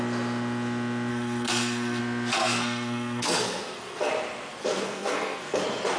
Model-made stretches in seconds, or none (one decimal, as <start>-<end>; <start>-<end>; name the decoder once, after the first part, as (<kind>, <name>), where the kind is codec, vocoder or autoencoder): 1.1-2.0 (codec, SNAC); 2.4-4.1; 4.6-5.6